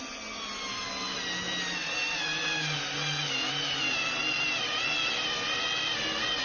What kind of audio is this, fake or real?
real